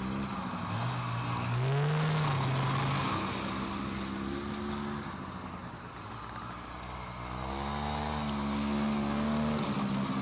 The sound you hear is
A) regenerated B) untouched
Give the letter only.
B